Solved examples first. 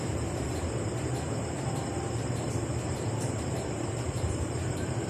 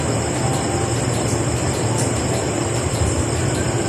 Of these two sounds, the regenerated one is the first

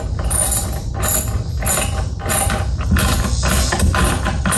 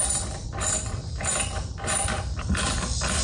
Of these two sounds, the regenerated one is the second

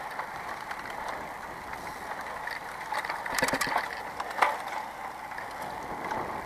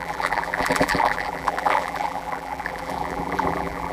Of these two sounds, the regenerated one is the second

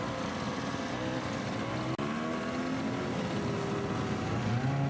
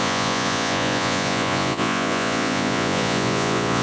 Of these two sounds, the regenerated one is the second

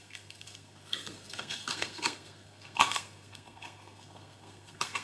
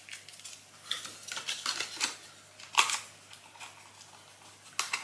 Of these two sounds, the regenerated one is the first